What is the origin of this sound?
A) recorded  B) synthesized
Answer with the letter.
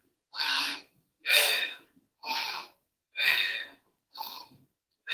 B